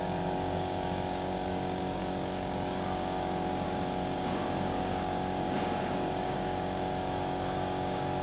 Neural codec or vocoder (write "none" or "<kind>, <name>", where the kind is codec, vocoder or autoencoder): codec, DAC